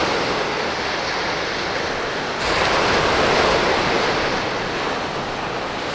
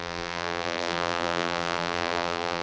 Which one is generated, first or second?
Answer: second